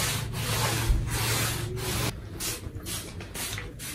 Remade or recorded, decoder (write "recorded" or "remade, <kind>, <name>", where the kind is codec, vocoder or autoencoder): recorded